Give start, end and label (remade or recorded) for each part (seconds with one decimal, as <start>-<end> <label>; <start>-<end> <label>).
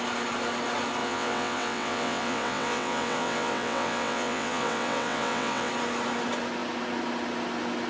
0.0-1.0 recorded; 1.0-5.7 remade; 5.7-7.9 recorded